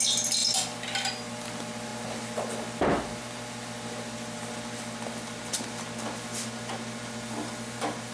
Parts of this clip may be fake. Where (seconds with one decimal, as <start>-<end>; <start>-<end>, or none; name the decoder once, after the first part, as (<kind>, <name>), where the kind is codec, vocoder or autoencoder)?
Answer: none